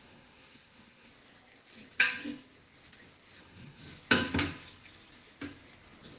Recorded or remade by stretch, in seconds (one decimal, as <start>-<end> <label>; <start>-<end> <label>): 0.0-1.1 remade; 1.1-3.4 recorded; 3.4-3.8 remade; 3.8-6.2 recorded